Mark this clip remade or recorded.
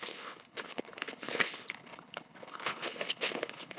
remade